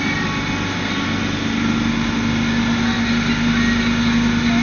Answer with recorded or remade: recorded